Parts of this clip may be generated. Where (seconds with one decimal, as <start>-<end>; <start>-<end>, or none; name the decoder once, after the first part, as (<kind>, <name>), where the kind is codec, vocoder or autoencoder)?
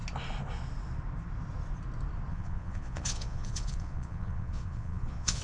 2.3-5.4 (vocoder, Vocos)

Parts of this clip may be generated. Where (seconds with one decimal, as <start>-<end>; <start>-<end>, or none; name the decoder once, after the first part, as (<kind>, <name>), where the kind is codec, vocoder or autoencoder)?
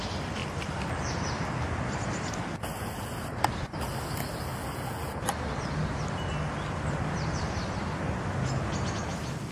0.0-4.5 (vocoder, BigVGAN v2); 6.9-7.8; 9.1-9.5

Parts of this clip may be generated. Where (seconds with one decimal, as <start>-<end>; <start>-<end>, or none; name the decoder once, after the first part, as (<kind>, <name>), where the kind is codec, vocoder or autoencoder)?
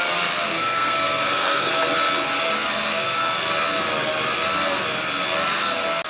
0.5-1.7 (codec, SNAC)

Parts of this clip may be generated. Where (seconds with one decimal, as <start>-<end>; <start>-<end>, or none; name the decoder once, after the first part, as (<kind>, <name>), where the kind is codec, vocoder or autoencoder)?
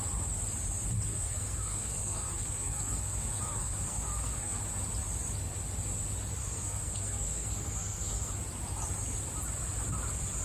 1.1-4.6 (codec, SNAC); 6.4-8.3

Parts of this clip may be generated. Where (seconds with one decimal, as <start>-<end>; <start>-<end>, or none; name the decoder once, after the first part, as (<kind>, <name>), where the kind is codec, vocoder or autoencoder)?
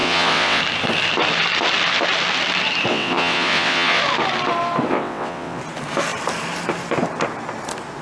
0.0-0.6 (vocoder, WaveNeXt); 2.9-4.0; 4.9-5.6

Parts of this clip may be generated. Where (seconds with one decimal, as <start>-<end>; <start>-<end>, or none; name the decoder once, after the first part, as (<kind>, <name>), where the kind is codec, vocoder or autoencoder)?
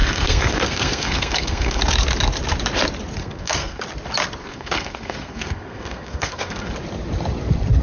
0.0-1.8 (codec, SNAC); 3.2-3.8; 4.4-6.7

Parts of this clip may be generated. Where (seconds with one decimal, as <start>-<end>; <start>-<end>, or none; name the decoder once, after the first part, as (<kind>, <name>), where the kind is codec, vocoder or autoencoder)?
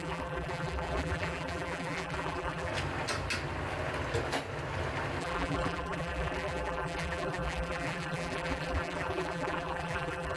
0.0-2.7 (vocoder, BigVGAN v2); 5.2-10.4